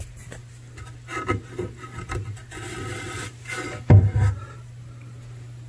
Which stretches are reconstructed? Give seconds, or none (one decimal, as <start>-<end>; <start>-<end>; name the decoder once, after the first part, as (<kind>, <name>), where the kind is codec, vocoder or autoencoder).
none